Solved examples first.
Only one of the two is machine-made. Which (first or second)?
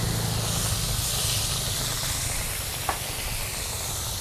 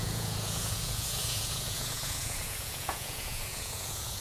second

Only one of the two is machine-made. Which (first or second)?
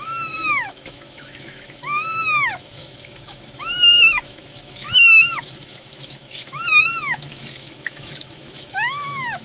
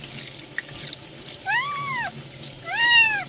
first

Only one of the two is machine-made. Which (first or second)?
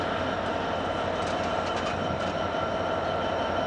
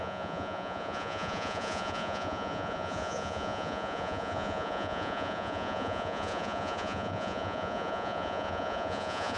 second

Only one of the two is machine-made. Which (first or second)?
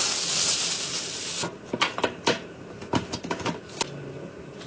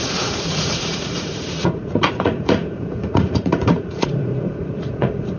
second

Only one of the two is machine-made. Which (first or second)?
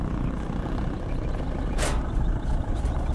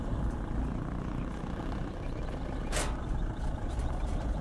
first